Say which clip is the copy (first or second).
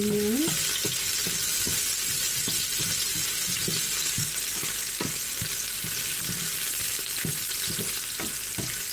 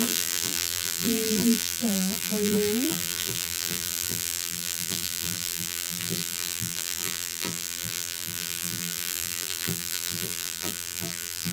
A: second